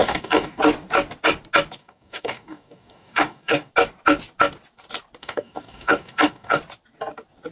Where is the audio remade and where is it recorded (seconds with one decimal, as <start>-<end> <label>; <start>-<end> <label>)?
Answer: 0.0-0.6 remade; 0.6-1.8 recorded; 1.8-3.7 remade; 3.7-5.2 recorded; 5.2-6.6 remade; 6.6-7.5 recorded